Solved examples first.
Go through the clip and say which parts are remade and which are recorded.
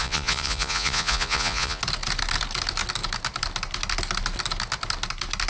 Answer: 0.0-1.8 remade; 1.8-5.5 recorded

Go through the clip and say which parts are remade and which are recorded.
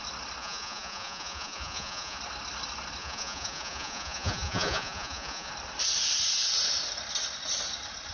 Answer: 0.0-0.4 recorded; 0.4-2.2 remade; 2.2-3.0 recorded; 3.0-5.5 remade; 5.5-8.1 recorded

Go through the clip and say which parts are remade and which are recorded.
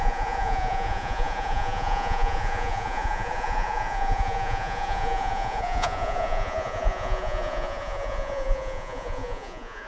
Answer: 0.0-9.9 remade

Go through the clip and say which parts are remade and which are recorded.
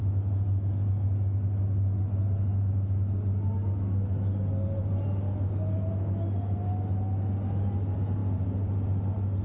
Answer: 0.0-9.4 recorded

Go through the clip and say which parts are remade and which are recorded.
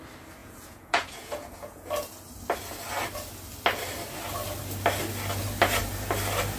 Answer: 0.0-0.4 recorded; 0.4-1.9 remade; 1.9-6.6 recorded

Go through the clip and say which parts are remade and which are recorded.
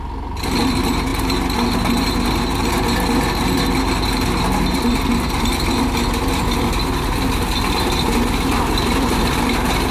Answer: 0.0-9.9 recorded